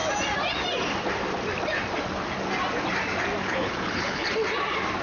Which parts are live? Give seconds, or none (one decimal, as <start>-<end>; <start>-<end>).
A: 0.0-3.4; 4.3-5.0